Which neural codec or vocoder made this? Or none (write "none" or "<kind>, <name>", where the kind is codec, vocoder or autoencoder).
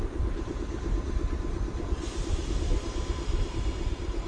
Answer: vocoder, BigVGAN v2